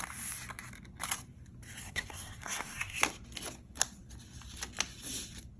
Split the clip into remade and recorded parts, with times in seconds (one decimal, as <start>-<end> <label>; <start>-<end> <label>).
0.0-1.8 recorded; 1.8-3.0 remade; 3.0-5.6 recorded